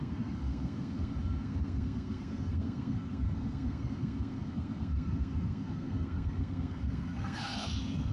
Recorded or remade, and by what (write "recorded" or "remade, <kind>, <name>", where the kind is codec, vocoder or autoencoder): remade, codec, SNAC